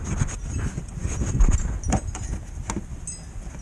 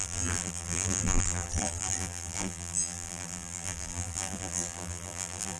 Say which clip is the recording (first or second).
first